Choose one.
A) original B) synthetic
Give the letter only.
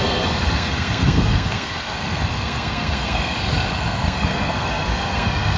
B